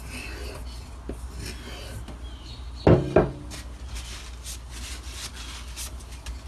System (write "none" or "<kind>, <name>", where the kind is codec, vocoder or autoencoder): none